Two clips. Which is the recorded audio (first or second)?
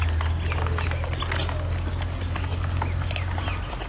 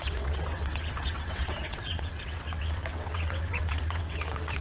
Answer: first